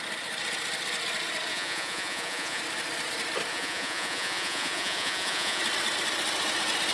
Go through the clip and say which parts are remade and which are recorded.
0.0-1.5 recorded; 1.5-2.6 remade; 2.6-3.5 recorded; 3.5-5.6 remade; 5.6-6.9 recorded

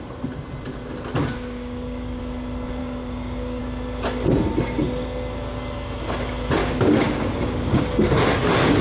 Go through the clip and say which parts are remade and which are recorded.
0.0-1.2 recorded; 1.2-2.2 remade; 2.2-2.8 recorded; 2.8-3.6 remade; 3.6-6.6 recorded; 6.6-7.8 remade; 7.8-8.8 recorded

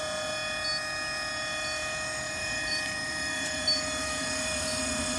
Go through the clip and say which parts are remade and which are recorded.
0.0-1.8 recorded; 1.8-5.2 remade

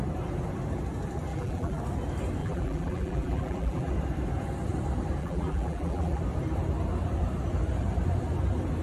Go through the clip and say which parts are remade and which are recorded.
0.0-1.3 recorded; 1.3-1.8 remade; 1.8-2.4 recorded; 2.4-3.9 remade; 3.9-5.2 recorded; 5.2-6.2 remade; 6.2-8.8 recorded

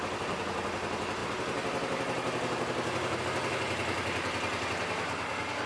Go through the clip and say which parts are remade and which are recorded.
0.0-5.7 recorded